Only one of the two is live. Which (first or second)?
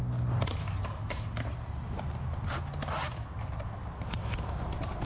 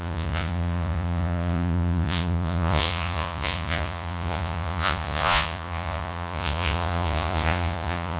first